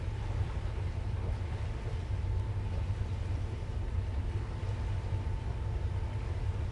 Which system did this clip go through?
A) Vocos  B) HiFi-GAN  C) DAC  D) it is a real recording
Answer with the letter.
D